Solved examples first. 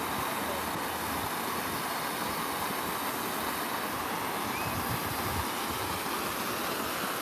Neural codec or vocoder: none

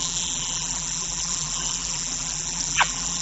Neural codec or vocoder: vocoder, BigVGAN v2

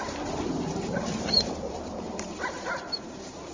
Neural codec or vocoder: vocoder, BigVGAN v2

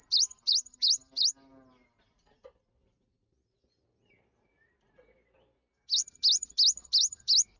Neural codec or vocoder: none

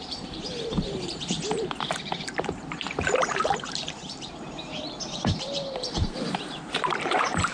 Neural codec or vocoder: vocoder, BigVGAN v2